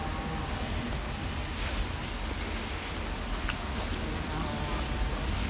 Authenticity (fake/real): real